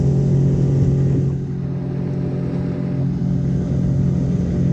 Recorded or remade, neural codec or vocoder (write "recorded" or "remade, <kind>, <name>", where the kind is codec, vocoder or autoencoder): recorded